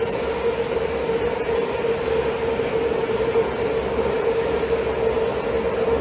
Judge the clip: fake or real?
real